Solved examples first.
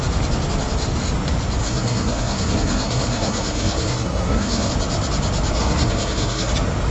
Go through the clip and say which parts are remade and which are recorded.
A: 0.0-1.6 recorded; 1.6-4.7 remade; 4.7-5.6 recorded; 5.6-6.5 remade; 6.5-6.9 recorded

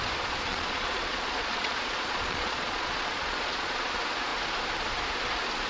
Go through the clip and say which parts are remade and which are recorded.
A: 0.0-0.5 recorded; 0.5-3.9 remade; 3.9-5.7 recorded

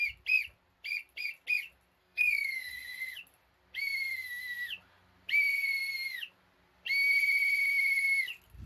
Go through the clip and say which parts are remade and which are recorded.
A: 0.0-2.0 recorded; 2.0-2.7 remade; 2.7-8.7 recorded

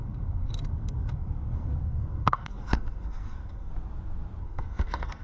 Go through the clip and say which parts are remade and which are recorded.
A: 0.0-3.7 remade; 3.7-4.4 recorded; 4.4-5.2 remade

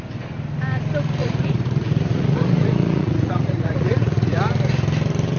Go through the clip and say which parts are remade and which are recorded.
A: 0.0-1.2 recorded; 1.2-4.4 remade; 4.4-5.4 recorded

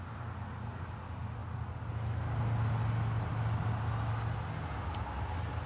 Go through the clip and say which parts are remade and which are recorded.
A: 0.0-5.7 recorded

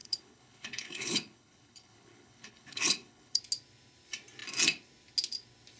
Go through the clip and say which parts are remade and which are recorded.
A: 0.0-3.4 remade; 3.4-5.8 recorded

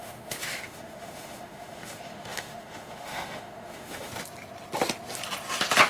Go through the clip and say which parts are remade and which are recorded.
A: 0.0-4.1 remade; 4.1-5.9 recorded